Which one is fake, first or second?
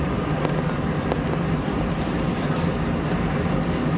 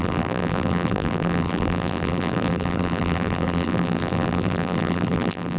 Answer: second